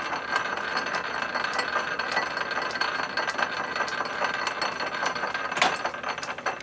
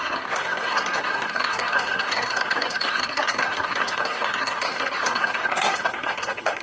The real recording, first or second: first